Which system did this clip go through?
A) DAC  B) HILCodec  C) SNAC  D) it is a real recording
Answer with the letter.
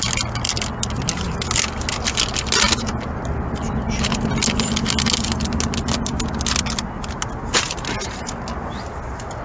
D